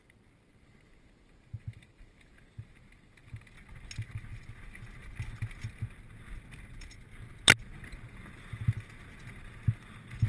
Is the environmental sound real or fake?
real